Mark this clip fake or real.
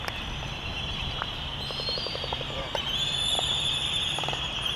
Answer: fake